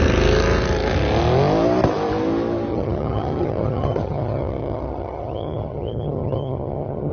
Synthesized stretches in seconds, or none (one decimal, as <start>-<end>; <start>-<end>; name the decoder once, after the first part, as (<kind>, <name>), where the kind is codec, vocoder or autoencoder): 2.7-7.1 (vocoder, HiFi-GAN)